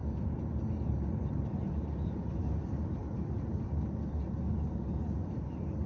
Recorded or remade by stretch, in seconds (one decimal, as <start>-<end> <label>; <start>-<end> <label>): 0.0-1.8 remade; 1.8-3.0 recorded; 3.0-5.0 remade; 5.0-5.9 recorded